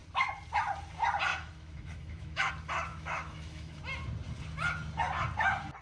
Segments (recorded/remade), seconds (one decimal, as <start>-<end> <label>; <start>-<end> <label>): 0.0-1.3 recorded; 1.3-2.5 remade; 2.5-2.9 recorded; 2.9-3.8 remade; 3.8-5.8 recorded